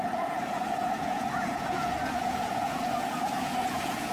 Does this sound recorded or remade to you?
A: remade